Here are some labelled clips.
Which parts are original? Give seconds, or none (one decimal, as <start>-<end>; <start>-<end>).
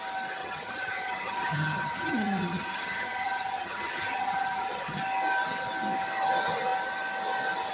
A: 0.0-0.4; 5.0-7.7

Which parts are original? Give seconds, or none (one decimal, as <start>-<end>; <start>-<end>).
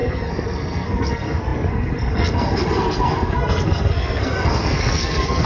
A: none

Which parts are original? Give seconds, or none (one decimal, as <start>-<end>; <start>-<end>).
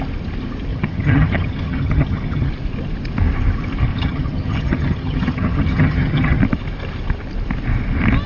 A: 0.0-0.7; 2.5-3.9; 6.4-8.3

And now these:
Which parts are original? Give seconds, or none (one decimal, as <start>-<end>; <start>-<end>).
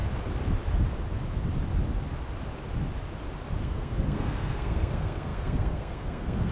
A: 0.0-3.6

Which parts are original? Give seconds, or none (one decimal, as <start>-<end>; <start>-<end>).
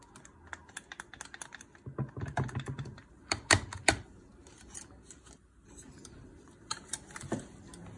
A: 0.0-2.3; 7.1-8.0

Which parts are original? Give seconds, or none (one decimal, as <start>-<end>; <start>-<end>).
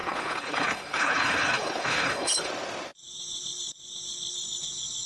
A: 2.5-5.1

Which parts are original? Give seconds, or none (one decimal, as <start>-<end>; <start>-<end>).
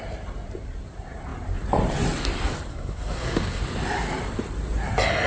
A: 0.0-2.7; 3.6-5.3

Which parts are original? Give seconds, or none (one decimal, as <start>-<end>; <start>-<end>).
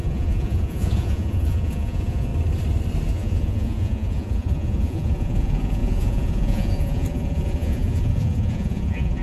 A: 2.3-3.1